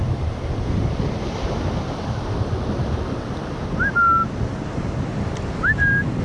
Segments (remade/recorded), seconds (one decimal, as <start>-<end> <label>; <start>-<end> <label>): 0.0-6.2 recorded